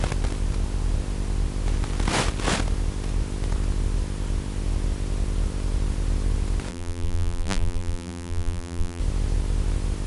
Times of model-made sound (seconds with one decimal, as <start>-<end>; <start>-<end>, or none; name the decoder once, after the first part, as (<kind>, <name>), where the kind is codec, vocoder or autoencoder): 6.7-9.0 (vocoder, BigVGAN v2)